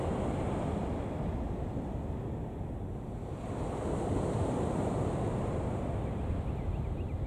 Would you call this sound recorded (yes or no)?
yes